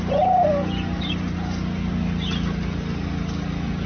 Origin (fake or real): real